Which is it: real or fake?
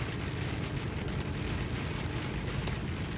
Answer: real